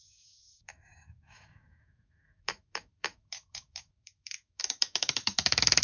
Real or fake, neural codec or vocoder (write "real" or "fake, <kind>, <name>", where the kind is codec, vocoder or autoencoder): fake, autoencoder, DAC-VAE